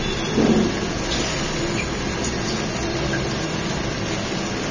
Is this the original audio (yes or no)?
yes